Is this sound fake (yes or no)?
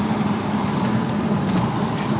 yes